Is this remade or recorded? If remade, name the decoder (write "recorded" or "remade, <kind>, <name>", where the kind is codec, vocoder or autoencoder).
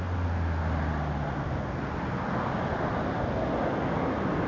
recorded